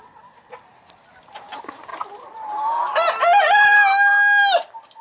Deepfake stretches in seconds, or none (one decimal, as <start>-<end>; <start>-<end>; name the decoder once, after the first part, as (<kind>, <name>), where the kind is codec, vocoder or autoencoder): none